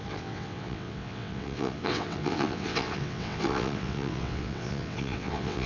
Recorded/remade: remade